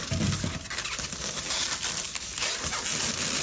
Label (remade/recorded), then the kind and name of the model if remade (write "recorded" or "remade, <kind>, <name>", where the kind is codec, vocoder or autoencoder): recorded